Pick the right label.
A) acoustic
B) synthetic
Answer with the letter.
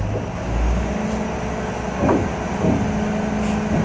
A